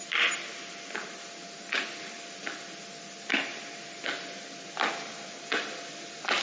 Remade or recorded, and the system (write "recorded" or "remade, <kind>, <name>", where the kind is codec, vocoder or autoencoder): recorded